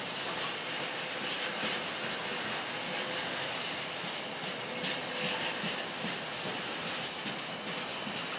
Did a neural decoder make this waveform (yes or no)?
no